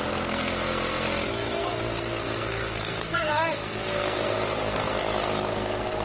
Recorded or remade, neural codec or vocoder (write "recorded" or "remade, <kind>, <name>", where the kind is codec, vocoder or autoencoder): remade, codec, SNAC